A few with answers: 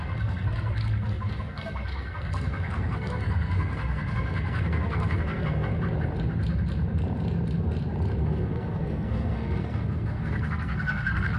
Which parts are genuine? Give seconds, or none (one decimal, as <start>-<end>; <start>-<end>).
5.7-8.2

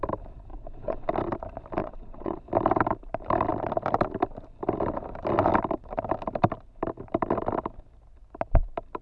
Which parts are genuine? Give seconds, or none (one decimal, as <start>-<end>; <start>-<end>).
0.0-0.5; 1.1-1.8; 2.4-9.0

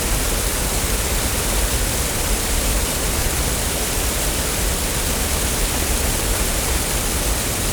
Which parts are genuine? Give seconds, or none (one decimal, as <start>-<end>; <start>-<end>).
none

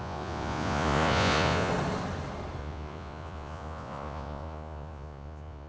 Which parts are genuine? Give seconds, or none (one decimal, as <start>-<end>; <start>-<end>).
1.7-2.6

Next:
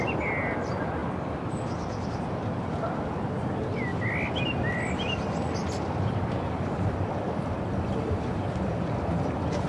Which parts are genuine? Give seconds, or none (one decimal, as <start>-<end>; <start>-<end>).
0.0-9.7

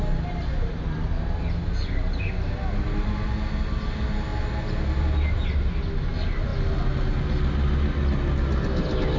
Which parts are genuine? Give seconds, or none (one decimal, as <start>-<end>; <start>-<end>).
0.0-9.2

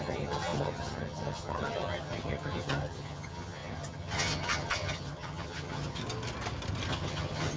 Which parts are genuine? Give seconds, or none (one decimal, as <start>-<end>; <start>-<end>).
6.0-6.9

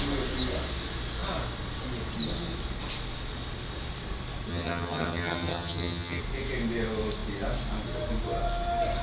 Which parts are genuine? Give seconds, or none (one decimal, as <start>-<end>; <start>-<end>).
0.0-4.5; 6.2-9.0